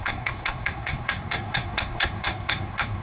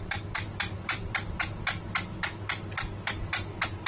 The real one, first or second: second